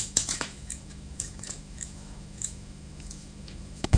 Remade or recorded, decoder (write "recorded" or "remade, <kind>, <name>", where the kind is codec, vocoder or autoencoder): remade, autoencoder, DAC-VAE